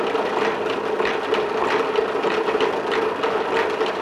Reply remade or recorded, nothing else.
recorded